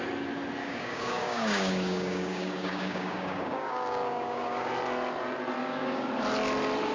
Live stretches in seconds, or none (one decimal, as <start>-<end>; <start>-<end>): 0.0-0.6; 4.7-5.6; 6.1-6.9